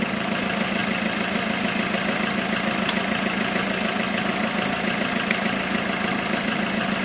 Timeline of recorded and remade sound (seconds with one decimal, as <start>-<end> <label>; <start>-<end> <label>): 0.0-7.0 recorded